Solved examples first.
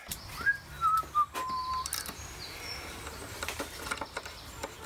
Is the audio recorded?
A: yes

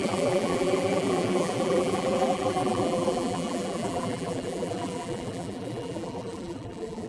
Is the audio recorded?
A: no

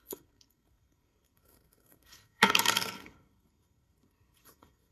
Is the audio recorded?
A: no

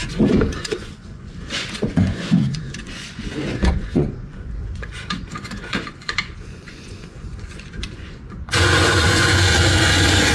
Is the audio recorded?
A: no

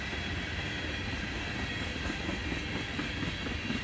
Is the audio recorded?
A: yes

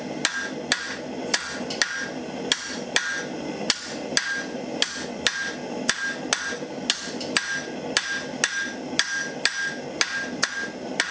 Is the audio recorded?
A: yes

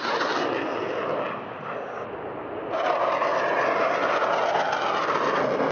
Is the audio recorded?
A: yes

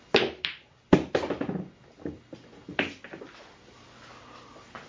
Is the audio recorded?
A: yes